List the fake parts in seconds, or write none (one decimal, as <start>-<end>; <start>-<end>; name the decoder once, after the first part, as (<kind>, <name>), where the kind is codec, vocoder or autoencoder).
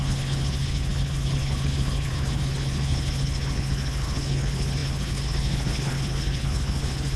0.0-7.2 (codec, HILCodec)